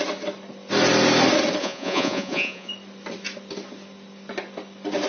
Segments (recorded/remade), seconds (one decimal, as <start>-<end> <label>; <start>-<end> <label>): 0.0-1.6 recorded; 1.6-2.7 remade; 2.7-5.1 recorded